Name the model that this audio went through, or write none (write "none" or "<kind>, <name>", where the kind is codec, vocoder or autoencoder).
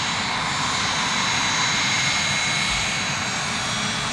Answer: none